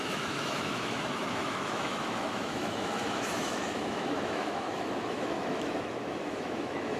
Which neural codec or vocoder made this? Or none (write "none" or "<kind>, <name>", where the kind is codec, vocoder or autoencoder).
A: autoencoder, DAC-VAE